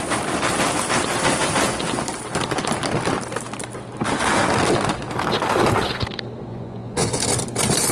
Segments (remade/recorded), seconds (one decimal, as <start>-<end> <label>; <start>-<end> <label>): 0.0-6.5 recorded; 6.5-7.2 remade; 7.2-7.9 recorded